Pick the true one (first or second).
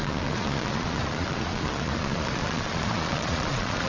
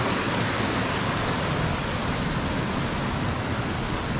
second